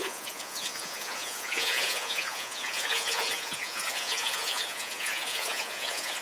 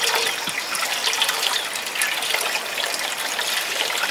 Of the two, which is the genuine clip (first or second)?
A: second